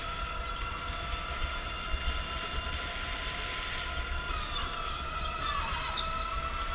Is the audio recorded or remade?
recorded